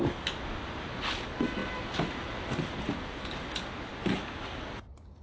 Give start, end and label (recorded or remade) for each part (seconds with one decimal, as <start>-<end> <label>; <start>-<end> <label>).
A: 0.0-5.2 recorded

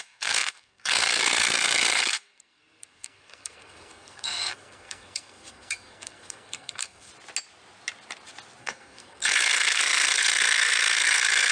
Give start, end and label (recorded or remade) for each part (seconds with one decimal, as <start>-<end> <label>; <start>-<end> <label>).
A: 0.0-7.1 remade; 7.1-8.6 recorded; 8.6-11.5 remade

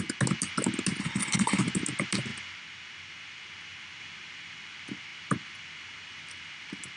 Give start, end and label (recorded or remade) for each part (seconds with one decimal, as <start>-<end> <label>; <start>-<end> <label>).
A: 0.0-1.0 recorded; 1.0-1.6 remade; 1.6-7.0 recorded

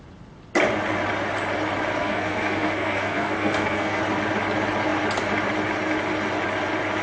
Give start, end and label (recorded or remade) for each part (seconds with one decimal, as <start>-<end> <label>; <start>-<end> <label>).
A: 0.0-2.0 recorded; 2.0-4.0 remade; 4.0-7.0 recorded

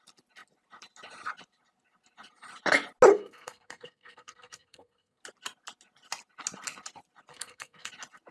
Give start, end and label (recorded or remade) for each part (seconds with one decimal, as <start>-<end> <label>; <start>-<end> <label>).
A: 0.0-3.1 recorded; 3.1-5.2 remade; 5.2-7.3 recorded; 7.3-7.9 remade; 7.9-8.3 recorded